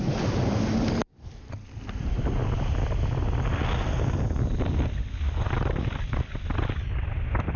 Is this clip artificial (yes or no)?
no